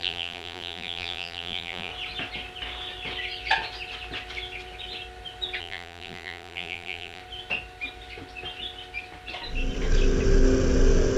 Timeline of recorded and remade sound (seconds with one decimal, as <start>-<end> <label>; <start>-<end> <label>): 0.0-1.9 remade; 1.9-5.6 recorded; 5.6-7.2 remade; 7.2-11.2 recorded